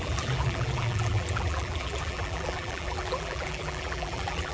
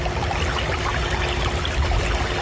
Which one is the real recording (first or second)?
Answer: second